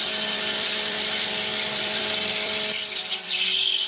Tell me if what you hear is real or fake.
fake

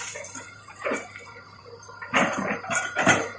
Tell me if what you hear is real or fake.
fake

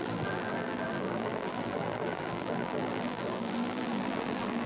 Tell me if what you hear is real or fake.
fake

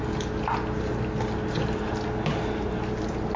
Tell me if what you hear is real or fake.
real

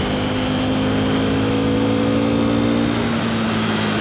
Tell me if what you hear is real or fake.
real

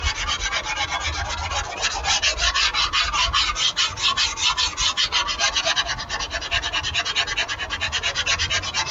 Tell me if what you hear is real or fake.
real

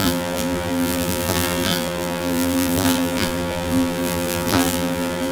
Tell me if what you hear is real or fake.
fake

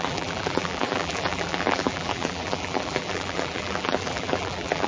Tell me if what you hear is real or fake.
fake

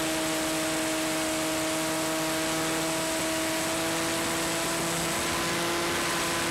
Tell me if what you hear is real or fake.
real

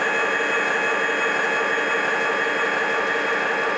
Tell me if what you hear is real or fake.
real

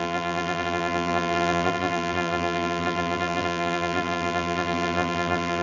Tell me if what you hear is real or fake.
fake